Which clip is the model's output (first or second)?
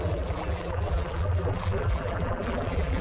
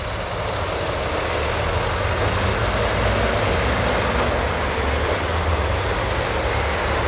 first